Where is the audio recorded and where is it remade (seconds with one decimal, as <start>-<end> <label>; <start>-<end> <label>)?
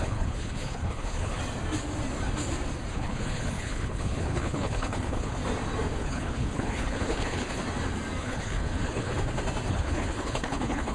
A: 0.0-1.4 remade; 1.4-2.9 recorded; 2.9-5.4 remade; 5.4-6.0 recorded; 6.0-7.6 remade; 7.6-8.2 recorded; 8.2-9.1 remade; 9.1-9.7 recorded; 9.7-10.9 remade